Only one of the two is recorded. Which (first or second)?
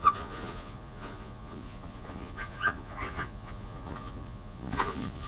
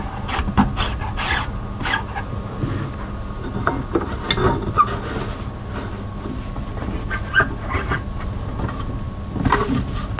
second